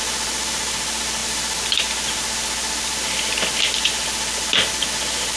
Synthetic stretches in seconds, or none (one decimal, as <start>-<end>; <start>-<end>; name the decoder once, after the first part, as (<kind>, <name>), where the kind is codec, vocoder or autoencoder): none